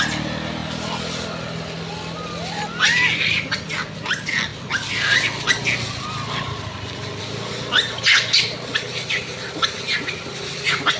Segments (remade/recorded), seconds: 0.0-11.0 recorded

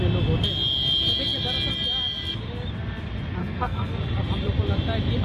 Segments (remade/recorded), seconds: 0.0-3.4 recorded; 3.4-4.0 remade; 4.0-5.2 recorded

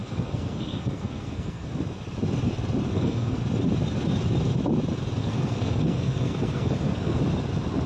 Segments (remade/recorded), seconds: 0.0-1.7 remade; 1.7-2.9 recorded; 2.9-3.4 remade; 3.4-5.2 recorded; 5.2-7.2 remade; 7.2-7.9 recorded

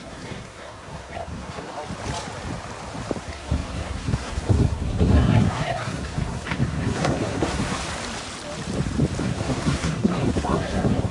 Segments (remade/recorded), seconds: 0.0-1.7 remade; 1.7-3.2 recorded; 3.2-7.8 remade; 7.8-9.2 recorded; 9.2-11.1 remade

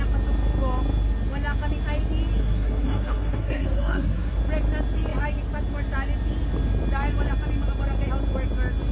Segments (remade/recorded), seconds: 0.0-2.4 recorded; 2.4-4.4 remade; 4.4-8.9 recorded

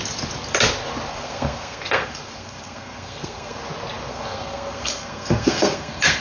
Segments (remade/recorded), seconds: 0.0-1.1 recorded; 1.1-3.6 remade; 3.6-4.1 recorded; 4.1-6.2 remade

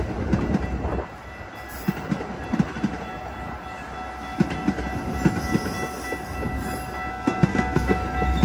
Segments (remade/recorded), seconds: 0.0-7.1 recorded; 7.1-8.0 remade; 8.0-8.4 recorded